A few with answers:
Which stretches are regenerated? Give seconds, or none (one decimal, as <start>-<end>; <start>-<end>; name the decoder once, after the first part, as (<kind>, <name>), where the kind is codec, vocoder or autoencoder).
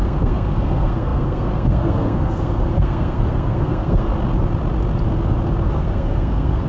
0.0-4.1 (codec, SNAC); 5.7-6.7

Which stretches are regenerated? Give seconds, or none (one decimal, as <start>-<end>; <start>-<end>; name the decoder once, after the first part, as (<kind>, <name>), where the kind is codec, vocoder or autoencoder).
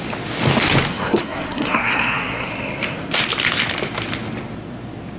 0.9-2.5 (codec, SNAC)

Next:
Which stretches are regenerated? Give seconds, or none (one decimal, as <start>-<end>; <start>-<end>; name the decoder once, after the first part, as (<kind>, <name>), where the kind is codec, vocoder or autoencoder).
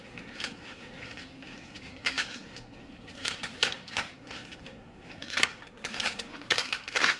0.0-7.2 (codec, SNAC)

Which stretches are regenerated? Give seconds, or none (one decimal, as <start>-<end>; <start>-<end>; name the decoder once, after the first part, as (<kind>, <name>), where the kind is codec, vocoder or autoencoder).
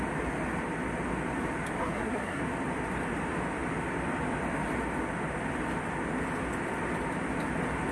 1.8-2.4 (codec, SNAC)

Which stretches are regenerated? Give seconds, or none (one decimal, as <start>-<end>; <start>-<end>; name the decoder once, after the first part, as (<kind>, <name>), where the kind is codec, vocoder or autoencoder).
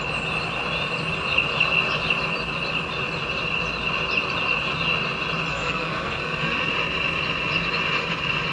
5.5-6.7 (codec, SNAC)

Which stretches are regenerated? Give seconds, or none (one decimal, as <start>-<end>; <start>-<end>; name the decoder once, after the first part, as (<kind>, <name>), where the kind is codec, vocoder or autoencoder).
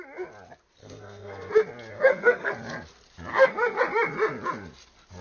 0.8-1.5 (codec, SNAC); 1.9-2.5; 3.3-3.8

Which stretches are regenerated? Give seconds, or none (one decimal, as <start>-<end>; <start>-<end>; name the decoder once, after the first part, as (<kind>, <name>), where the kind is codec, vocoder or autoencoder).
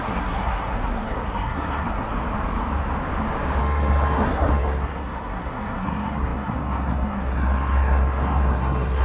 0.0-2.1 (codec, SNAC); 3.6-9.0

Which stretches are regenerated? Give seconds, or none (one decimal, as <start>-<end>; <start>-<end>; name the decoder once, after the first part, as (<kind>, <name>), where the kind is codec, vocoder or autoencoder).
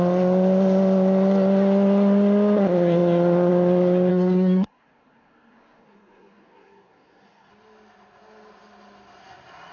4.1-7.5 (codec, SNAC)